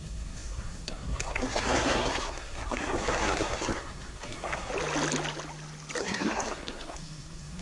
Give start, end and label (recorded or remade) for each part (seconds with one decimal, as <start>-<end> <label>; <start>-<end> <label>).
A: 0.0-4.7 remade; 4.7-6.0 recorded; 6.0-7.6 remade